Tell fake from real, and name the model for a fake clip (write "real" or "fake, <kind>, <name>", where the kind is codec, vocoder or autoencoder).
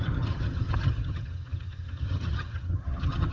fake, vocoder, HiFi-GAN